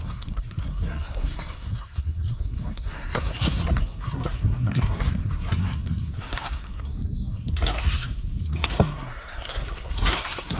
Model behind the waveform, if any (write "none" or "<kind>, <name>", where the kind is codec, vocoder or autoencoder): codec, SNAC